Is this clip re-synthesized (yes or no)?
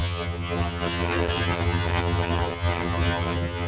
yes